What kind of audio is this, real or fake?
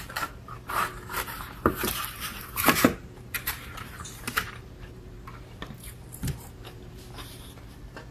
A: fake